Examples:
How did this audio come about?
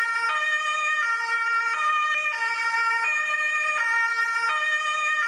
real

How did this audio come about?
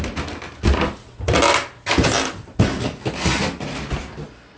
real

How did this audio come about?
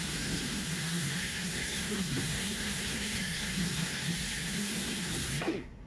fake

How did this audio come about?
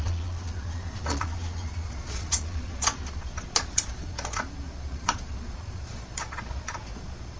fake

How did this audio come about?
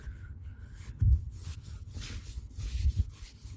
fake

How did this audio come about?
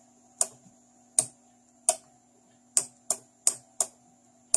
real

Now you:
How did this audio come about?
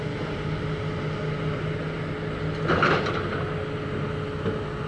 real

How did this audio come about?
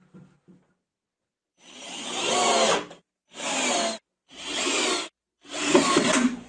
real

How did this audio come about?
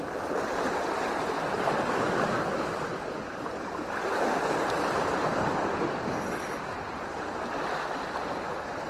real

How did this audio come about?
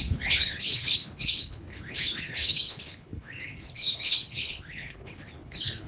fake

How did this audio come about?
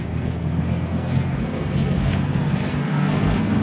fake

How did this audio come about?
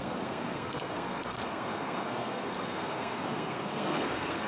fake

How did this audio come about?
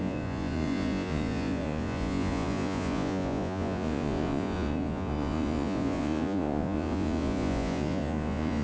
fake